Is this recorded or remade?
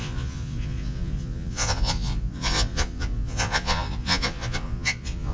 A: remade